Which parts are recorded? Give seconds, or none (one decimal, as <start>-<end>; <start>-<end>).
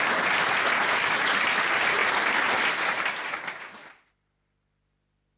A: 0.0-5.4